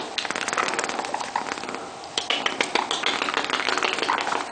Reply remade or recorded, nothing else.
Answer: recorded